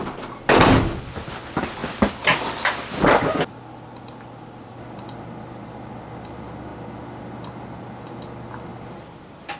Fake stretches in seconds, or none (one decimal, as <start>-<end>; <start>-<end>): 8.7-9.6